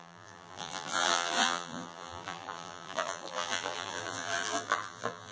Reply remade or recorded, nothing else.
remade